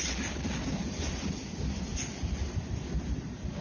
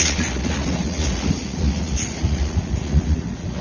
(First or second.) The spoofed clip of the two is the second